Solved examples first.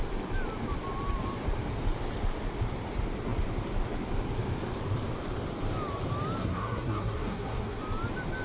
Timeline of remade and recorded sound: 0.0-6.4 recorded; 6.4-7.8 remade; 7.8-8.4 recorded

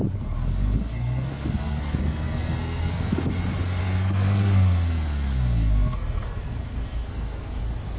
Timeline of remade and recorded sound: 0.0-0.5 recorded; 0.5-3.3 remade; 3.3-3.8 recorded; 3.8-7.6 remade; 7.6-8.0 recorded

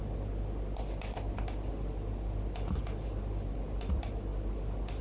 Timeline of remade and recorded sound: 0.0-5.0 recorded